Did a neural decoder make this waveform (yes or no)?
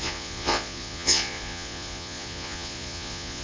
yes